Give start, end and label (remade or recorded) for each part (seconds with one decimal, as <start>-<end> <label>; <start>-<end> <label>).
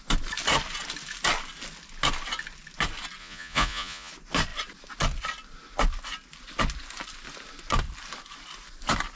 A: 0.0-3.2 recorded; 3.2-4.1 remade; 4.1-9.2 recorded